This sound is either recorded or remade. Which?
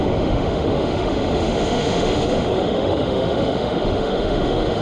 remade